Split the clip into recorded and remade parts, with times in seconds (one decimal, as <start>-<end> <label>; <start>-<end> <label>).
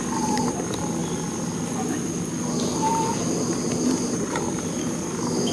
0.0-4.8 recorded; 4.8-5.5 remade